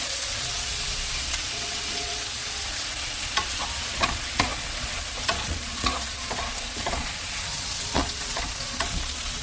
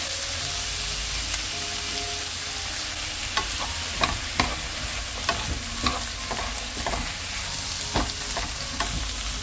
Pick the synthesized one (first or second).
first